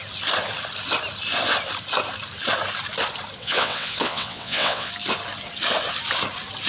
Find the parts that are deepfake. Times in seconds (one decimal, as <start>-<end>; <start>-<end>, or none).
3.4-4.9